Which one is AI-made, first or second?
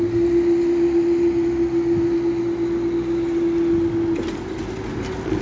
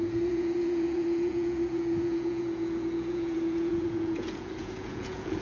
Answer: second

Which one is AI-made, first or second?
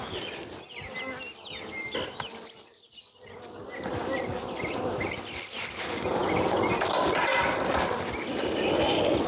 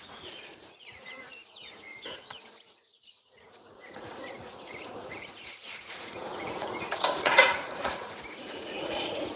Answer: second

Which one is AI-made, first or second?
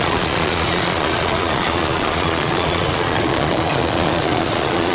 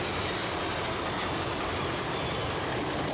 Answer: first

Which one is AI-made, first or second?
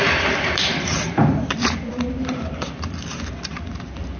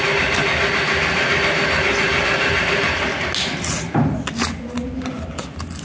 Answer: first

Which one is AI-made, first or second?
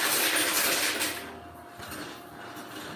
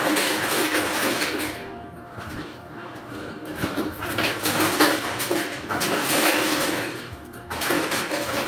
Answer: second